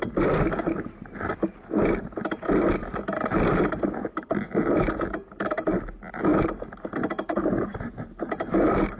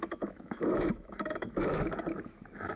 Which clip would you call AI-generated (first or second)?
second